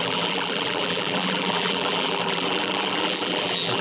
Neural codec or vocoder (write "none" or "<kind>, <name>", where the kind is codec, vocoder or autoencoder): vocoder, BigVGAN v2